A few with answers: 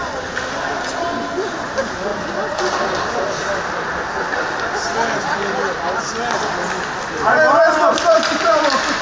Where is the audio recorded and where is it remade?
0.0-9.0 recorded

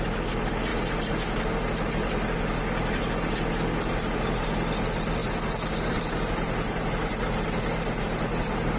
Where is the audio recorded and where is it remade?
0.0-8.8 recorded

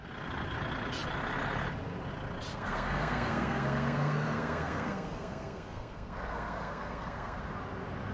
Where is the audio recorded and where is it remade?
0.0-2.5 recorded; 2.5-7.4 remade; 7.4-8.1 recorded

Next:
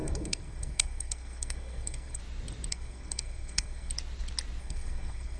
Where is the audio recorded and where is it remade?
0.0-2.2 remade; 2.2-2.7 recorded; 2.7-3.9 remade; 3.9-4.6 recorded; 4.6-5.4 remade

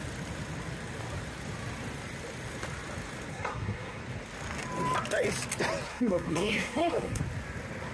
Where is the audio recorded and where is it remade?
0.0-3.3 recorded; 3.3-4.0 remade; 4.0-5.9 recorded; 5.9-7.2 remade; 7.2-7.9 recorded

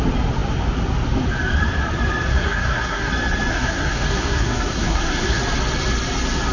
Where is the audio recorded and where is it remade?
0.0-2.3 recorded; 2.3-3.1 remade; 3.1-3.5 recorded; 3.5-5.4 remade; 5.4-6.5 recorded

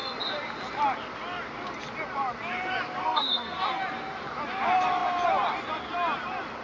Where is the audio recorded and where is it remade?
0.0-3.0 recorded; 3.0-3.8 remade; 3.8-6.6 recorded

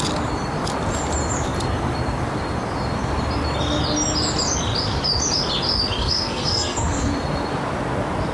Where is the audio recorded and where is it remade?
0.0-6.0 recorded; 6.0-7.1 remade; 7.1-8.3 recorded